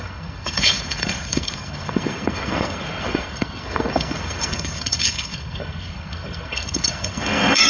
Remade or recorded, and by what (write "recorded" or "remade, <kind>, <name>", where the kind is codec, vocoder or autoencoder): remade, codec, SNAC